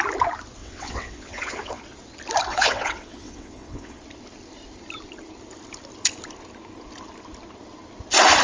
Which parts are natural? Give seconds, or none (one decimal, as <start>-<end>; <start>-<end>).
0.0-0.6; 1.8-2.5; 4.0-8.4